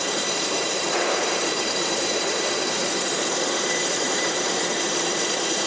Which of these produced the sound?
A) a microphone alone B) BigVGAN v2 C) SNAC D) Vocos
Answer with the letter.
B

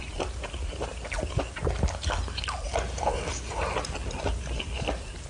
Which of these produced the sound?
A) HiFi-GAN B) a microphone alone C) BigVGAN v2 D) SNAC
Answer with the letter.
B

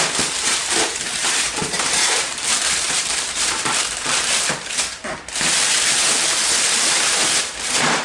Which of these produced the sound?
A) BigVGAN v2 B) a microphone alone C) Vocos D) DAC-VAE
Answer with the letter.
A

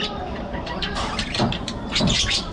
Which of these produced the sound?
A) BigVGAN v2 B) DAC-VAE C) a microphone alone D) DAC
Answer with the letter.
A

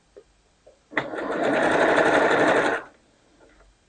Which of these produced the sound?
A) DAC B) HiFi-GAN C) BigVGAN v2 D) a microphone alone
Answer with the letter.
D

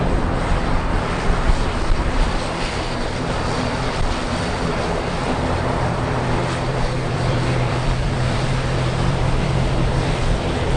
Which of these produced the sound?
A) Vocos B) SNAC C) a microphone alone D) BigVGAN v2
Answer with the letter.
D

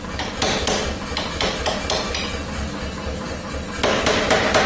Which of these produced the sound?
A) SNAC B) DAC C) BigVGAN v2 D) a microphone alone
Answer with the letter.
D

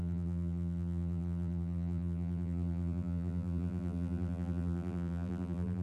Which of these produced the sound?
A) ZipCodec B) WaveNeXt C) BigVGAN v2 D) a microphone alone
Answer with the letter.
C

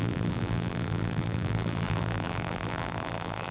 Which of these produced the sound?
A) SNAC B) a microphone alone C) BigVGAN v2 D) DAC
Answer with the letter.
C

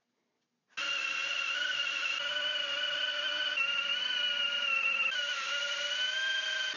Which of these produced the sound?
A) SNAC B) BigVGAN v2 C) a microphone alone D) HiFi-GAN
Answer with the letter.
C